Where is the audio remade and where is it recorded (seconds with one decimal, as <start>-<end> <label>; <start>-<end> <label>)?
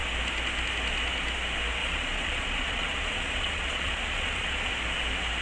0.0-1.8 recorded; 1.8-4.7 remade; 4.7-5.4 recorded